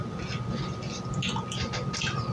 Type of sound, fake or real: real